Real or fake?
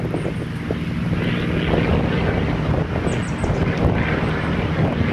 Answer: real